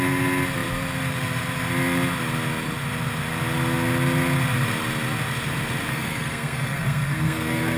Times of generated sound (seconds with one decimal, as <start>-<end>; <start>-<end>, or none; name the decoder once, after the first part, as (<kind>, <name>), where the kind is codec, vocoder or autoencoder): 5.9-7.8 (codec, SNAC)